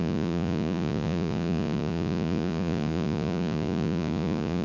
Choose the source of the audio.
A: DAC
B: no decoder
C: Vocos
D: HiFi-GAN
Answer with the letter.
C